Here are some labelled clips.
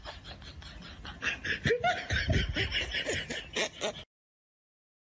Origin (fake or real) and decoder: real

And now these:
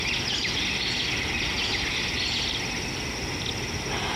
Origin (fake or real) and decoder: real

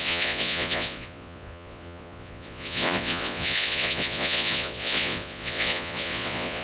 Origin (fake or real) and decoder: fake, vocoder, Vocos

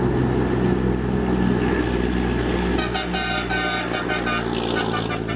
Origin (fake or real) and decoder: real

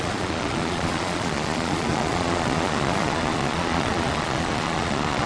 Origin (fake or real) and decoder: fake, vocoder, Vocos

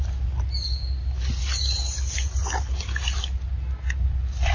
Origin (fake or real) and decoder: real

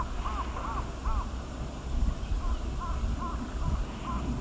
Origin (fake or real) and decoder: real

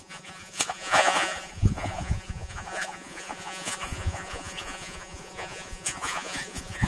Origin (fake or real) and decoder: fake, vocoder, Vocos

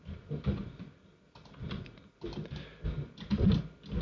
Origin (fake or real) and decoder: real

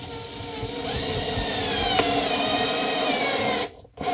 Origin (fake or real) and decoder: real